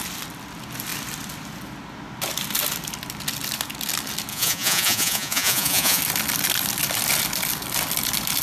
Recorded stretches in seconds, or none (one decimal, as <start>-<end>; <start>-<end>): 0.0-4.3; 6.0-8.4